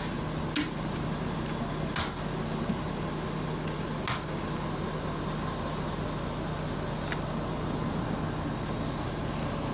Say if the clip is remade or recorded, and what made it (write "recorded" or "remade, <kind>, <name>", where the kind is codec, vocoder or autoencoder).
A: recorded